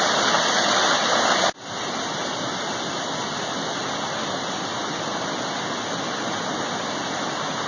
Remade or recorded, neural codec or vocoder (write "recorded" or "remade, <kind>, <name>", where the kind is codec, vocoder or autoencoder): recorded